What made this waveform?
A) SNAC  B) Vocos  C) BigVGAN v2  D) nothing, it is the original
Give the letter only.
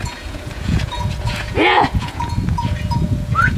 B